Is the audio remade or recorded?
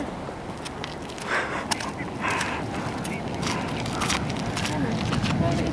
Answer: recorded